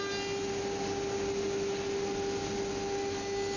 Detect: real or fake real